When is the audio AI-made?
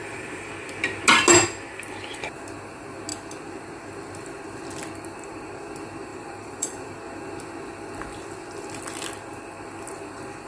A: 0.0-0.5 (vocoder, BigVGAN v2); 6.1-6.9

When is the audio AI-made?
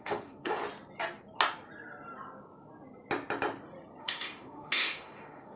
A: 0.0-0.6 (autoencoder, DAC-VAE); 4.0-5.6